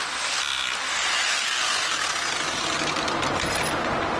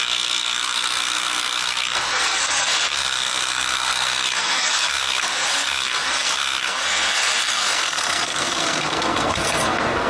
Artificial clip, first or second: second